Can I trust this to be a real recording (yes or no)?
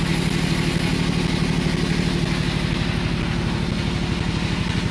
yes